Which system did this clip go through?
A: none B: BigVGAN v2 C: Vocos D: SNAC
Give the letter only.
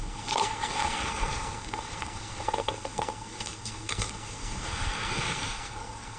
D